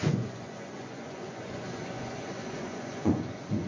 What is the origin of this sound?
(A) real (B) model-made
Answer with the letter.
B